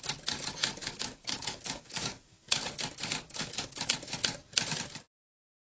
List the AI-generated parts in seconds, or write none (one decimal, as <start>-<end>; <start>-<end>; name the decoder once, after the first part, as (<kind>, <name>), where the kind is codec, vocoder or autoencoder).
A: 0.8-2.6 (codec, DAC); 3.4-3.9